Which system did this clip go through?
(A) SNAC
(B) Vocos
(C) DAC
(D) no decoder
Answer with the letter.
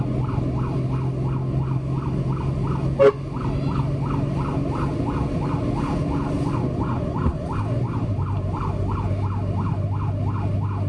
D